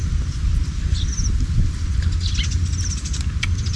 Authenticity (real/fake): real